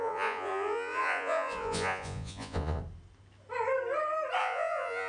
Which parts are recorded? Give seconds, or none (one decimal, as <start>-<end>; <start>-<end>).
2.8-4.4